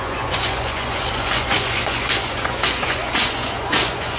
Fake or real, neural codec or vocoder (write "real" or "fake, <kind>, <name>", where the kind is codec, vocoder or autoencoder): fake, vocoder, Vocos